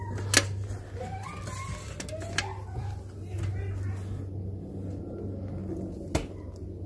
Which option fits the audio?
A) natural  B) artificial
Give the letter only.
A